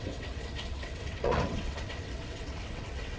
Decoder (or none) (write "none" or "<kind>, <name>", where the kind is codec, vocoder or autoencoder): vocoder, WaveNeXt